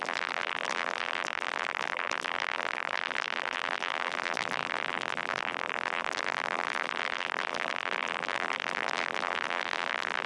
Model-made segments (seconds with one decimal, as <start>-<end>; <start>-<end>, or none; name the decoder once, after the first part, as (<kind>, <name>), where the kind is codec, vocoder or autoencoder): 0.0-10.3 (vocoder, BigVGAN v2)

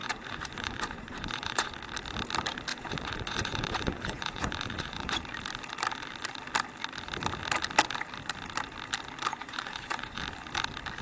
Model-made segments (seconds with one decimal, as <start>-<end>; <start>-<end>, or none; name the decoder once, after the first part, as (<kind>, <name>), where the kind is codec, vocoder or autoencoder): 0.0-1.7 (vocoder, Vocos); 2.7-5.2; 9.3-10.2

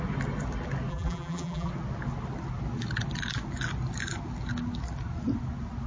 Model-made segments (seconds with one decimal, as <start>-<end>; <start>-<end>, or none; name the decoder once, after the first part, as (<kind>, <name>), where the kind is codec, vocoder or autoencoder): 0.9-1.7 (vocoder, BigVGAN v2)

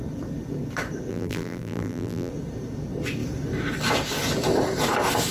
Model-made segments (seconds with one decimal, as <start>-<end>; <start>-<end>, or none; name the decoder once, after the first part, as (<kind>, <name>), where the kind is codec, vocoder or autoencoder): 1.1-2.3 (vocoder, BigVGAN v2)

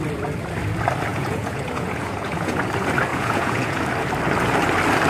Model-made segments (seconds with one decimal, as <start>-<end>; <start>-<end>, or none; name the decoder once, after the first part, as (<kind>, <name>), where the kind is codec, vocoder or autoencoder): 1.1-2.6 (vocoder, Vocos); 3.1-3.8